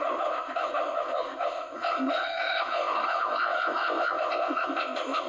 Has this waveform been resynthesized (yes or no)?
yes